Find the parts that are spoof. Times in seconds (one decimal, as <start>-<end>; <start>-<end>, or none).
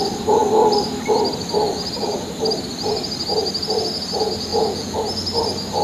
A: 4.5-5.0